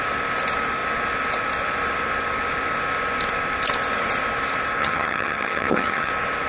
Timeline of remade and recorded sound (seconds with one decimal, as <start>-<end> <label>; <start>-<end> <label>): 0.0-4.8 recorded; 4.8-6.1 remade; 6.1-6.5 recorded